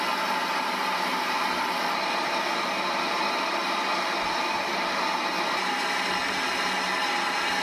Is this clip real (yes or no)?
yes